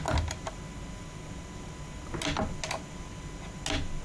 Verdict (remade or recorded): recorded